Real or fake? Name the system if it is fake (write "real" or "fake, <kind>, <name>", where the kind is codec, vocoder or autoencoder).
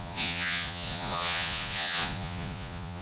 fake, vocoder, Vocos